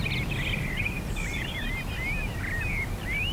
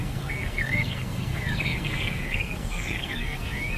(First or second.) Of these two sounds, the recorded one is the first